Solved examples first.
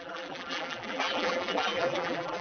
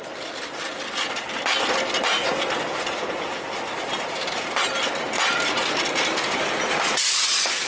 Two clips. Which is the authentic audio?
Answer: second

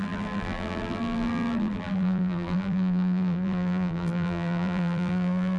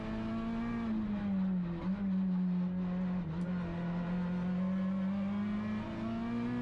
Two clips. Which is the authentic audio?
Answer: second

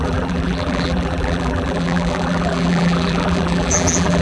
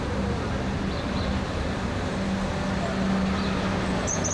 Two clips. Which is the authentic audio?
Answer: second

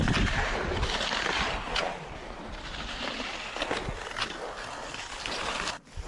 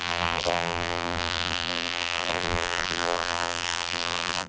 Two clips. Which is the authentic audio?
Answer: first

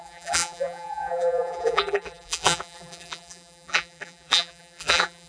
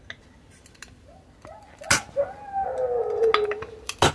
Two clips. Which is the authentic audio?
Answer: second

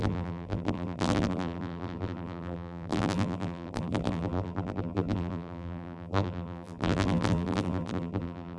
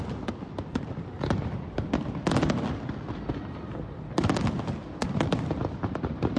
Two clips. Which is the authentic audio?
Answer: second